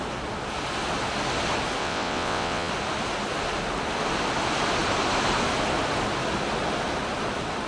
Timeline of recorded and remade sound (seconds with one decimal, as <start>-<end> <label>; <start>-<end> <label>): 0.0-1.8 recorded; 1.8-2.7 remade; 2.7-7.7 recorded